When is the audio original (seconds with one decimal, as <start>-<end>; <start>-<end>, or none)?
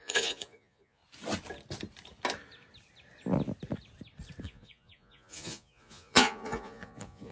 1.0-4.4